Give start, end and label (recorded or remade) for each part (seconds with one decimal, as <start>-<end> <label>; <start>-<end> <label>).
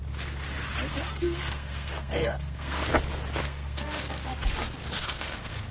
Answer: 0.0-0.9 recorded; 0.9-2.9 remade; 2.9-3.4 recorded; 3.4-4.3 remade; 4.3-5.0 recorded; 5.0-5.7 remade